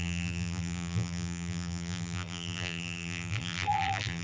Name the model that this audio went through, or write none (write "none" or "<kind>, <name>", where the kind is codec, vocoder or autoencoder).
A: vocoder, BigVGAN v2